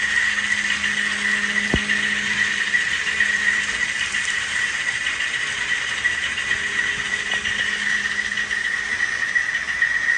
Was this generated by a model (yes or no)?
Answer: no